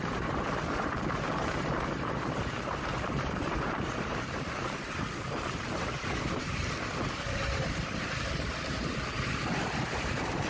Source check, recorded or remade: remade